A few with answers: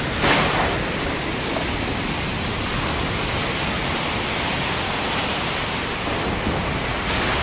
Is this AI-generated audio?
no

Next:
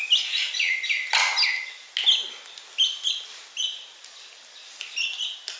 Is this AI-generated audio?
no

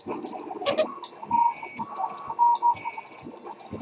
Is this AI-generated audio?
no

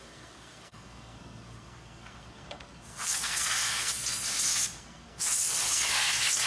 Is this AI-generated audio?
yes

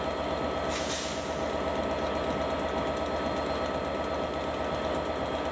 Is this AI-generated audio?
no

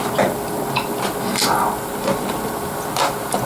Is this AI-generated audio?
no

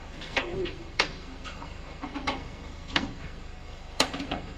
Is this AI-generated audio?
yes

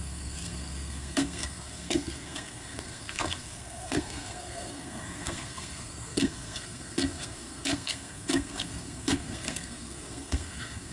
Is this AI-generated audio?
yes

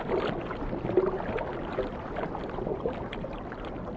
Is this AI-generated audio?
no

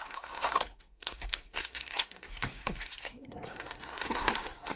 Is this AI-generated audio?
yes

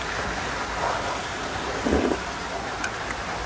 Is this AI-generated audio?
no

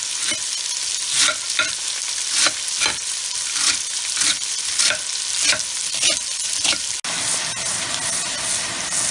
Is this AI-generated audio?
no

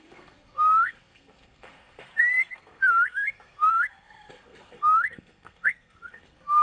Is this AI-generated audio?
yes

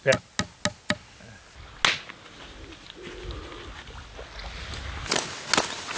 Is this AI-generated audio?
no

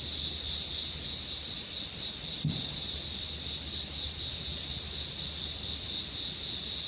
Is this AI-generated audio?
no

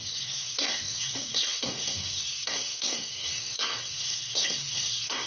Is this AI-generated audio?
yes